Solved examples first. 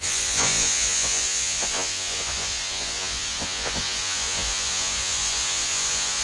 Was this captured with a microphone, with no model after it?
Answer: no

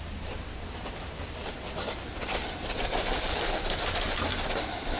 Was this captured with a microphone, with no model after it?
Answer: yes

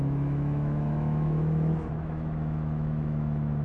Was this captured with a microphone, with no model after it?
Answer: no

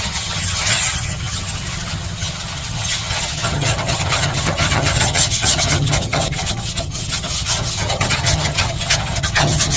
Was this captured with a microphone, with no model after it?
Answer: no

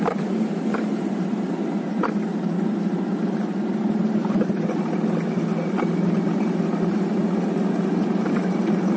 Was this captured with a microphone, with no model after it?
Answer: yes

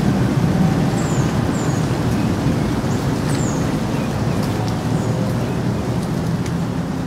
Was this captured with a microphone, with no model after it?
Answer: yes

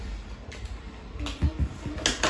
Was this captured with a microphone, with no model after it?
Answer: yes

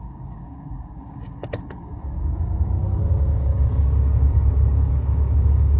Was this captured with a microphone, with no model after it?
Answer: no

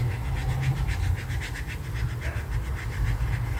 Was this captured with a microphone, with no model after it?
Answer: yes